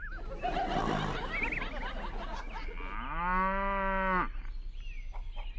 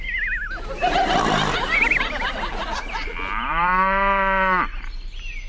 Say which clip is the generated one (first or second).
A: second